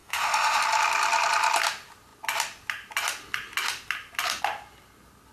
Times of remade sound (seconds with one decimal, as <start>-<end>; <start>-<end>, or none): 0.0-0.6